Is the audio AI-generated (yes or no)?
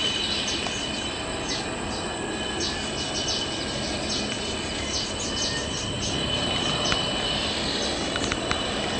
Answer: no